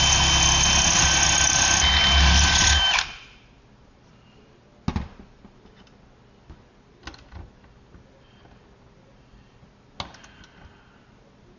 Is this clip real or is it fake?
real